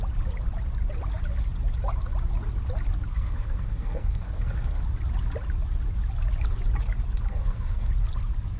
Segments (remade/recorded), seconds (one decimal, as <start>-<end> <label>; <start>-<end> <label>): 0.0-3.1 recorded; 3.1-4.8 remade; 4.8-7.3 recorded; 7.3-7.9 remade; 7.9-8.6 recorded